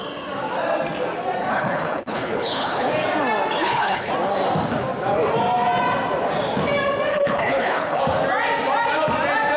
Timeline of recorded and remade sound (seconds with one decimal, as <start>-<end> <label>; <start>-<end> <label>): 0.0-1.5 recorded; 1.5-2.9 remade; 2.9-3.6 recorded; 3.6-4.1 remade; 4.1-7.1 recorded; 7.1-8.0 remade; 8.0-9.6 recorded